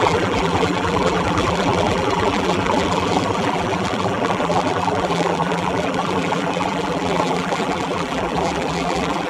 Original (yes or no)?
no